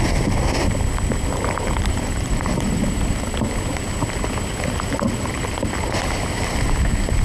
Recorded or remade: recorded